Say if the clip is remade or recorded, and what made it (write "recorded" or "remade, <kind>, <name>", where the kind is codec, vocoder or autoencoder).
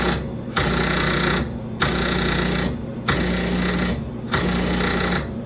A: recorded